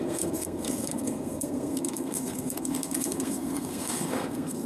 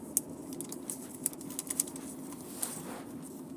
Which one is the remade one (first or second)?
first